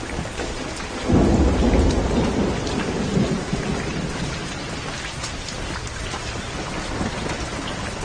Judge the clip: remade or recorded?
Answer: recorded